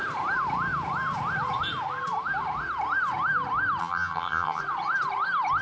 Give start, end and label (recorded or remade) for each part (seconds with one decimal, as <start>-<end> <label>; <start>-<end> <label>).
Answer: 0.0-3.8 recorded; 3.8-4.6 remade; 4.6-5.6 recorded